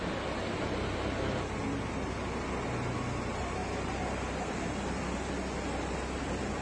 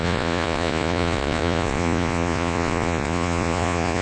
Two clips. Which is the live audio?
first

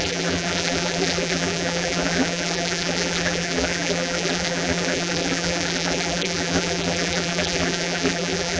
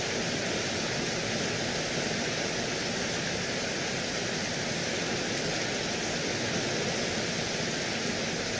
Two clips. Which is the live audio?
second